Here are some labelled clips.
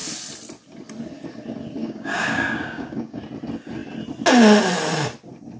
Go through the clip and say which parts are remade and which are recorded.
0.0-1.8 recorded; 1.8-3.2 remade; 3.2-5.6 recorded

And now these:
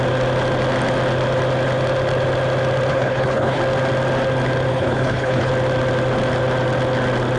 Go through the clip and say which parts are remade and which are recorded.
0.0-2.9 recorded; 2.9-3.6 remade; 3.6-4.7 recorded; 4.7-5.5 remade; 5.5-7.4 recorded

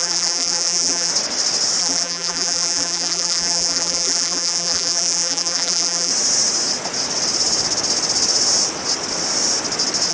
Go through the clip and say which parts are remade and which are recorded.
0.0-1.1 remade; 1.1-1.8 recorded; 1.8-6.1 remade; 6.1-10.1 recorded